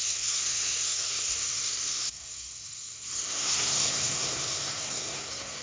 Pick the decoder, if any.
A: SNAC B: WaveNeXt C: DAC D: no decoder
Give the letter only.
A